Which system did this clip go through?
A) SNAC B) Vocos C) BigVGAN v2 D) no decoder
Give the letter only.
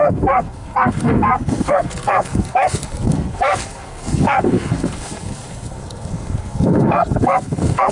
A